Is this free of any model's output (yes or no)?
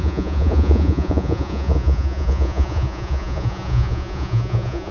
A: no